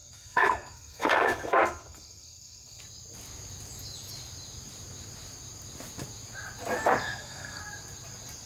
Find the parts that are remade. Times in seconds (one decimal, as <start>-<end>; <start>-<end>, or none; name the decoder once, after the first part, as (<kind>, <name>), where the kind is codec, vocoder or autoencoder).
0.0-2.8 (codec, SNAC); 7.0-7.6